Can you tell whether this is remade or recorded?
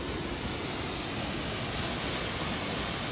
recorded